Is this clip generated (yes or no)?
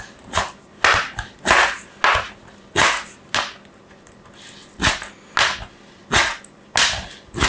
no